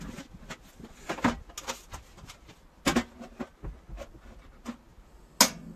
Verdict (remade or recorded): recorded